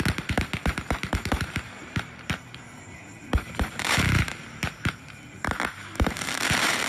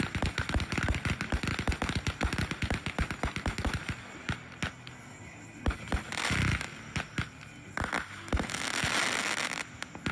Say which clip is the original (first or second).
second